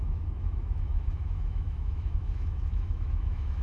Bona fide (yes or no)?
no